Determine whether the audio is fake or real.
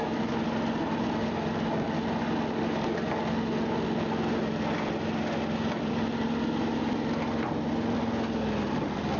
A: real